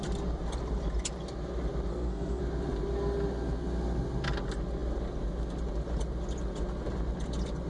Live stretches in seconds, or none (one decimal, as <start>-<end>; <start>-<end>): 0.0-1.9; 2.4-7.7